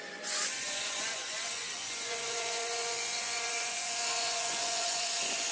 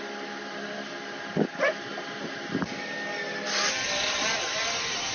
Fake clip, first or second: first